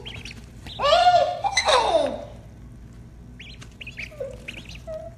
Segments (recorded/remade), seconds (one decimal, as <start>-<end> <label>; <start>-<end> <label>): 0.0-1.0 recorded; 1.0-1.9 remade; 1.9-5.2 recorded